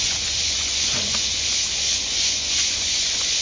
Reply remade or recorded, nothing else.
remade